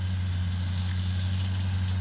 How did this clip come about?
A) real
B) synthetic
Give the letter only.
A